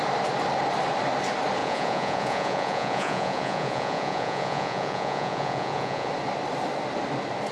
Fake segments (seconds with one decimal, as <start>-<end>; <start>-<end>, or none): 1.6-6.1